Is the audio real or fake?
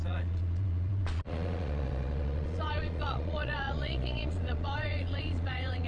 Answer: fake